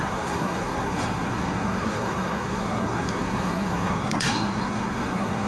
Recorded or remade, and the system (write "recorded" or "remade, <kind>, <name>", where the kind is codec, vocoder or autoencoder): remade, codec, SNAC